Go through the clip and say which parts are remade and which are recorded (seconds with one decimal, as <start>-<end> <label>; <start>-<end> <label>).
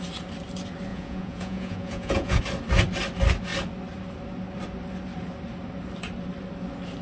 0.0-0.9 recorded; 0.9-2.4 remade; 2.4-7.0 recorded